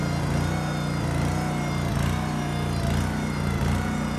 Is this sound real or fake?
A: real